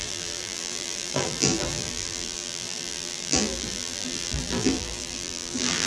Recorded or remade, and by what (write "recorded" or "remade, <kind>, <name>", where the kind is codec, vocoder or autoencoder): remade, vocoder, BigVGAN v2